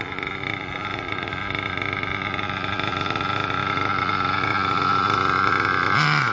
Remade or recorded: recorded